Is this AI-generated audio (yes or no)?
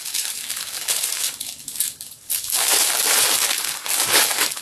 yes